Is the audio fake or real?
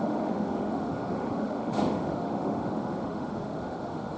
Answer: fake